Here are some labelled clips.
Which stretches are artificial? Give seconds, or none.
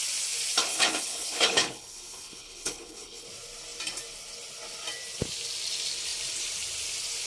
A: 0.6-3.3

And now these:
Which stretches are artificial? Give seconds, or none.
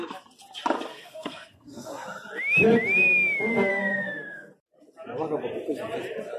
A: 0.9-1.9; 3.7-4.5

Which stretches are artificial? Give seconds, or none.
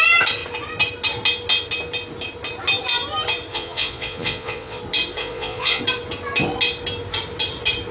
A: 3.5-4.8; 5.2-5.8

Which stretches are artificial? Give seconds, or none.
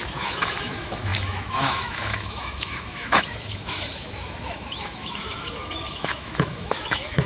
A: 0.0-7.3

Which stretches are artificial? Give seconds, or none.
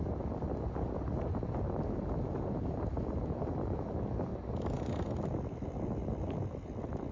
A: none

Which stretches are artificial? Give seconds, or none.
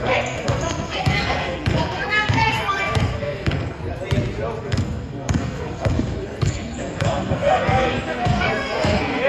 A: 0.0-3.8; 4.6-9.3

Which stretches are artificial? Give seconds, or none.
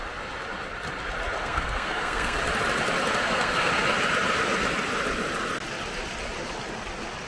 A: 1.4-2.4; 3.2-3.7